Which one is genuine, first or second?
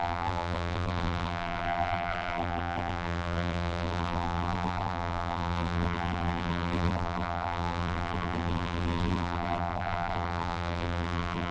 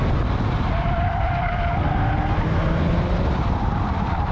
second